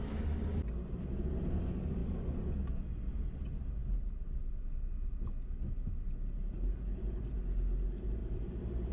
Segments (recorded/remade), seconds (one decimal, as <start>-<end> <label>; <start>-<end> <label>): 0.0-8.2 recorded; 8.2-8.9 remade